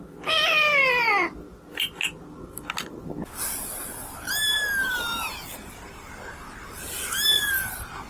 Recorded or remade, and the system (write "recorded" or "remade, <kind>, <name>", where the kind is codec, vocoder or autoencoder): recorded